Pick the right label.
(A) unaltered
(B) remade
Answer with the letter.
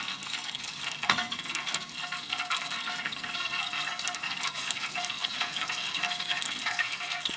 B